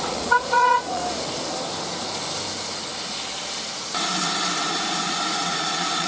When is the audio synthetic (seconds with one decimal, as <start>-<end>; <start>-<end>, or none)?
0.0-1.0; 4.7-6.1